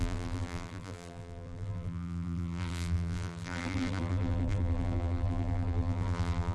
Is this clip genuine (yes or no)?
no